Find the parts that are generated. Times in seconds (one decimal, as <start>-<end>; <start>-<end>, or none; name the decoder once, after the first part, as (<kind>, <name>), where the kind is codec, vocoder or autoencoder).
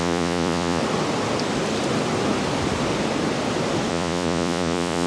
0.0-0.8 (vocoder, Vocos); 3.9-5.1